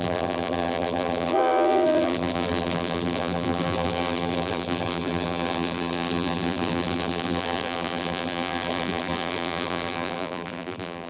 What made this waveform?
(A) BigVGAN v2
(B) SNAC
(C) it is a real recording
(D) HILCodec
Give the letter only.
A